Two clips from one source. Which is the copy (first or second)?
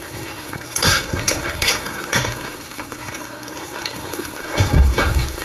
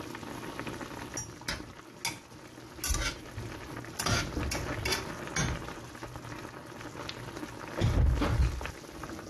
first